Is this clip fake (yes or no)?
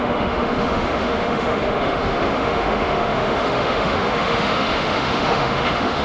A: yes